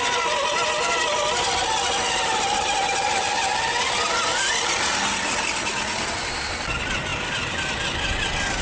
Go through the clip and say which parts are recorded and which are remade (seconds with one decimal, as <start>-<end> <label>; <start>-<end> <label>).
0.0-8.6 recorded